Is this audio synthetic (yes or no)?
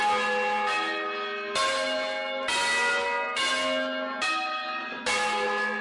no